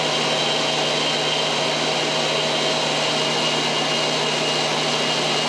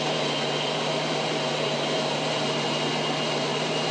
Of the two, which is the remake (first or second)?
second